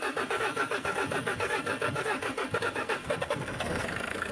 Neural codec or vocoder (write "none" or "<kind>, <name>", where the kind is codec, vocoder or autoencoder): codec, SNAC